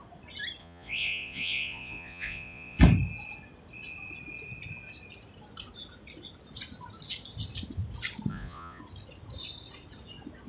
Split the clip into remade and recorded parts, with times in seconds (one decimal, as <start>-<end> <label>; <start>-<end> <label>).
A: 0.0-0.6 recorded; 0.6-2.8 remade; 2.8-8.3 recorded; 8.3-8.8 remade; 8.8-10.5 recorded

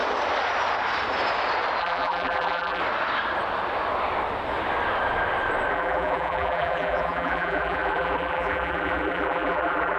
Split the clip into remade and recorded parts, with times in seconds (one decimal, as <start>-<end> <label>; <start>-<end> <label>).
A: 0.0-1.8 recorded; 1.8-2.8 remade; 2.8-5.7 recorded; 5.7-10.0 remade

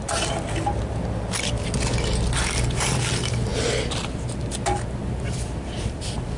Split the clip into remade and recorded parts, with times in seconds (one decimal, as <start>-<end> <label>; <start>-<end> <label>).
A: 0.0-6.4 recorded